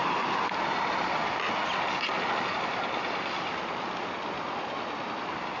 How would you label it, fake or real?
real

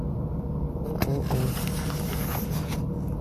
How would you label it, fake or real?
real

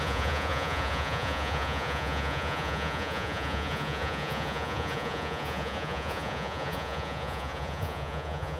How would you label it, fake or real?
fake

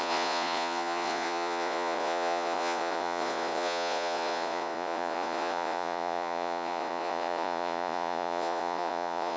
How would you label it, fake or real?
fake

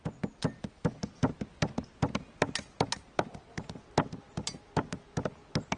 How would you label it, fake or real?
real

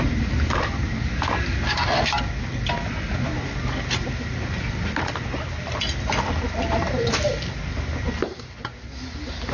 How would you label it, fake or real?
real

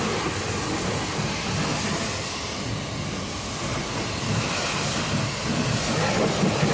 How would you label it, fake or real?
real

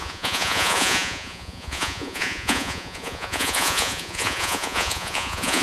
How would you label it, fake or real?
fake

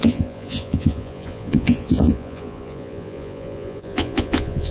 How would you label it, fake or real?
fake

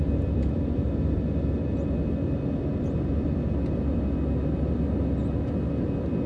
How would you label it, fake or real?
real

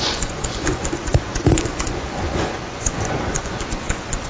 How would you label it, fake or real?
fake